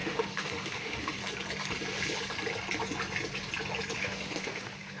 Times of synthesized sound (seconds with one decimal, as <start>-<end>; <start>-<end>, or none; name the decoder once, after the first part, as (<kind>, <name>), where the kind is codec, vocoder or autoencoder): 0.0-1.2 (autoencoder, DAC-VAE); 4.0-5.0